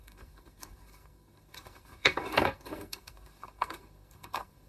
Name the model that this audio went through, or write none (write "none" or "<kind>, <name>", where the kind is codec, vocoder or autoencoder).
codec, SNAC